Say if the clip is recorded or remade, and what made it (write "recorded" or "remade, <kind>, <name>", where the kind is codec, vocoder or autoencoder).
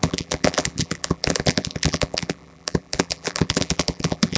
remade, vocoder, BigVGAN v2